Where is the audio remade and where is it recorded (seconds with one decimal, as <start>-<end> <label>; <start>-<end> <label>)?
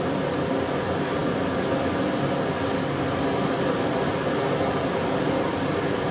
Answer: 0.0-6.1 recorded